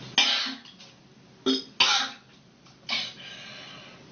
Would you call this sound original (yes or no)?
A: yes